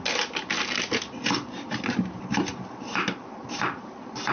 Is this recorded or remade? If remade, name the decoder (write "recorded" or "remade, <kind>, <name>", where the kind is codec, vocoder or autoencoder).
recorded